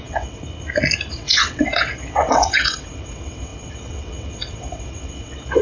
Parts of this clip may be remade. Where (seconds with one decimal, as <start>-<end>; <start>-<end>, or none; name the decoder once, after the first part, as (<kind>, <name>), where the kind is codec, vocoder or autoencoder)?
0.0-0.4 (vocoder, WaveNeXt); 1.1-5.6